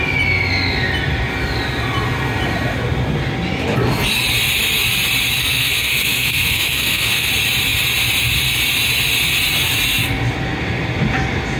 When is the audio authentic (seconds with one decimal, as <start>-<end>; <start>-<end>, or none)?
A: 0.0-5.4; 7.3-11.6

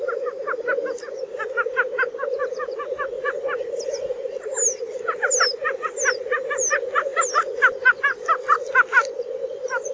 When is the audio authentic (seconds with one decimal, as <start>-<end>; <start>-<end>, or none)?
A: 0.0-9.9

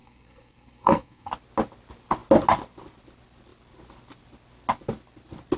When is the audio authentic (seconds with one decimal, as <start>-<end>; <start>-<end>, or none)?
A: 1.3-5.6

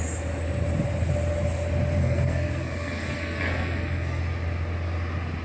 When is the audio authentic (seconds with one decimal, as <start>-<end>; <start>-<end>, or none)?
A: 0.0-2.0; 4.2-5.4

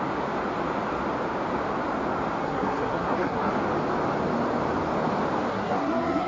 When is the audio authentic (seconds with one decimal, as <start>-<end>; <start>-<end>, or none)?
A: 0.0-2.4; 3.5-5.5

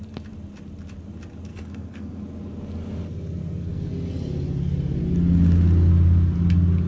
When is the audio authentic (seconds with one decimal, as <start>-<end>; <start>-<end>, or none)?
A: 0.0-1.5; 2.2-3.4; 3.9-6.9

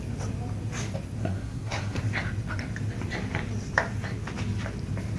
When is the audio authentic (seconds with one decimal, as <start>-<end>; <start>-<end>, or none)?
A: 0.0-1.2; 2.0-5.2

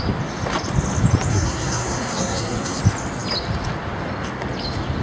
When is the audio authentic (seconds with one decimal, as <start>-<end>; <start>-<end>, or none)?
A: 0.0-1.3; 2.8-5.0